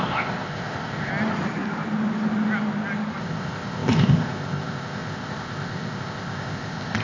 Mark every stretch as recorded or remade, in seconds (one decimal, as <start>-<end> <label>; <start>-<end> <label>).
0.0-1.1 remade; 1.1-3.2 recorded; 3.2-7.0 remade

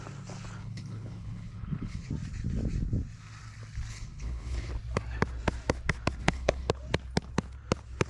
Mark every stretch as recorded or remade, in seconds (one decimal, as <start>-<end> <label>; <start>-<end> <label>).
0.0-0.6 recorded; 0.6-2.1 remade; 2.1-3.9 recorded; 3.9-4.7 remade; 4.7-6.2 recorded; 6.2-6.7 remade; 6.7-8.1 recorded

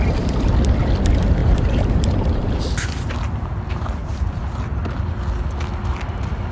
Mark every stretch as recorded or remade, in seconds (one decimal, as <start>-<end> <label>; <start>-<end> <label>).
0.0-1.4 recorded; 1.4-2.6 remade; 2.6-4.0 recorded; 4.0-4.5 remade; 4.5-6.5 recorded

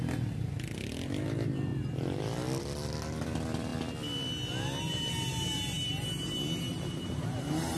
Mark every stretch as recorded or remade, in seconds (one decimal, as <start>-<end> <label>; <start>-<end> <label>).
0.0-6.7 recorded; 6.7-7.8 remade

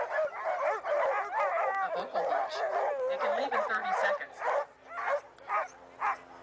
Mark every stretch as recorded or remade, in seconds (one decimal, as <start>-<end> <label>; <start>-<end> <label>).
0.0-3.8 recorded; 3.8-4.3 remade; 4.3-6.4 recorded